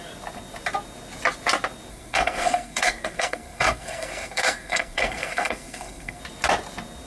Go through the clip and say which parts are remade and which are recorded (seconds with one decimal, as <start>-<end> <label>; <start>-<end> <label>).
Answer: 0.0-1.9 recorded; 1.9-6.2 remade; 6.2-7.1 recorded